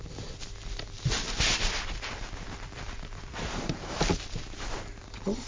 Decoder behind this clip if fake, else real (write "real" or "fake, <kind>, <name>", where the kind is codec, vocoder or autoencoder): real